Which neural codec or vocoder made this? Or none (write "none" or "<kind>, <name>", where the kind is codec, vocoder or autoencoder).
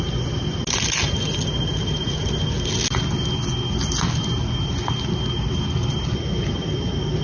none